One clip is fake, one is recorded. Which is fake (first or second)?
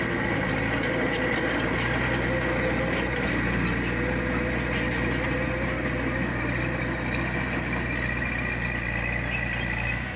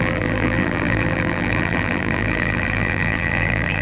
second